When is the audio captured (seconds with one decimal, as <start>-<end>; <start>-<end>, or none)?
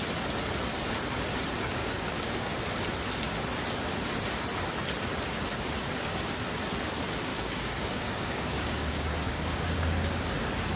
0.0-1.8; 2.5-7.3; 10.3-10.8